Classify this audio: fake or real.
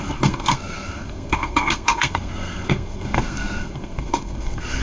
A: fake